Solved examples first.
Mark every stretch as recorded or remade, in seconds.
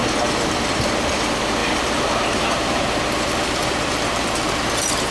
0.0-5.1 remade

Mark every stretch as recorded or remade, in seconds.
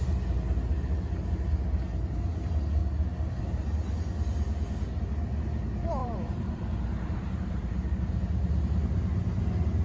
0.0-6.0 recorded; 6.0-8.0 remade; 8.0-9.8 recorded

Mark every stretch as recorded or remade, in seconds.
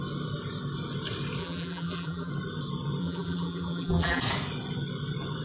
0.0-1.4 recorded; 1.4-2.3 remade; 2.3-3.0 recorded; 3.0-4.2 remade; 4.2-5.4 recorded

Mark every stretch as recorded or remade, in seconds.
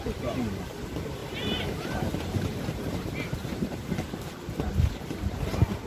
0.0-1.2 recorded; 1.2-4.7 remade; 4.7-5.9 recorded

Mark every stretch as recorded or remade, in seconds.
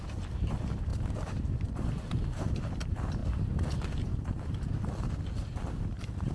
0.0-3.2 remade; 3.2-6.3 recorded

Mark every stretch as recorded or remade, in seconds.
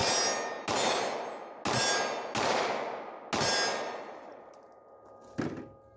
0.0-3.7 recorded; 3.7-4.4 remade; 4.4-6.0 recorded